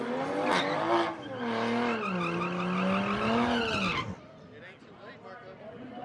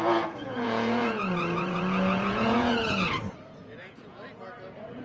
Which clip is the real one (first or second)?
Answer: first